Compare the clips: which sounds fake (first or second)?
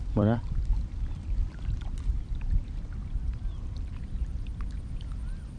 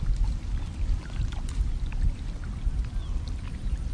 first